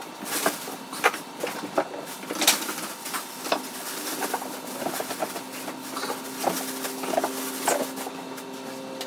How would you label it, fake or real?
real